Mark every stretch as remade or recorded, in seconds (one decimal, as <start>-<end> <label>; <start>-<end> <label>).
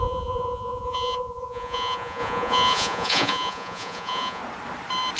0.0-4.4 remade; 4.4-5.2 recorded